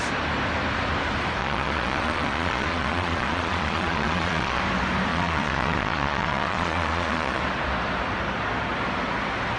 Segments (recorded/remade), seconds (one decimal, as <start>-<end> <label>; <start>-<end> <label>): 0.0-1.4 recorded; 1.4-4.6 remade; 4.6-5.1 recorded; 5.1-7.4 remade; 7.4-9.6 recorded